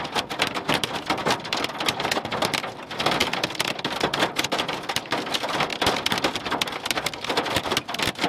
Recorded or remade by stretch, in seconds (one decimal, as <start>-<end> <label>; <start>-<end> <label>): 0.0-1.2 recorded; 1.2-2.2 remade; 2.2-3.2 recorded; 3.2-3.7 remade; 3.7-5.7 recorded; 5.7-6.8 remade; 6.8-8.3 recorded